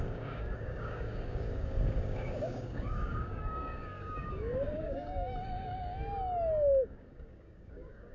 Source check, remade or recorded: remade